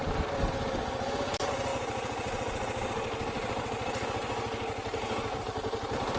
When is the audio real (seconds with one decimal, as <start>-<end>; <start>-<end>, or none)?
0.0-6.2